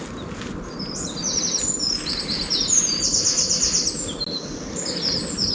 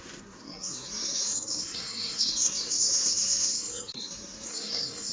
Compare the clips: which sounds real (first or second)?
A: first